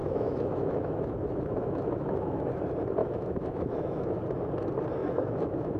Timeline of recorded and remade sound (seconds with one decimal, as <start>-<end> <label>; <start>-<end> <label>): 0.0-2.6 remade; 2.6-3.0 recorded; 3.0-4.2 remade; 4.2-5.0 recorded; 5.0-5.8 remade